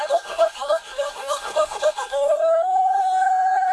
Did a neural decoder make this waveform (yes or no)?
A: yes